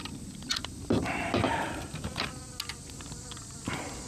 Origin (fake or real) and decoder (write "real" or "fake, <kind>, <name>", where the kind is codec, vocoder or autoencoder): real